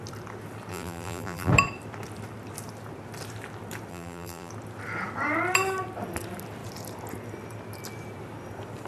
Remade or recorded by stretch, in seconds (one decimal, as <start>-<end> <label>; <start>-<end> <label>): 0.0-0.7 recorded; 0.7-1.5 remade; 1.5-3.9 recorded; 3.9-4.5 remade; 4.5-8.9 recorded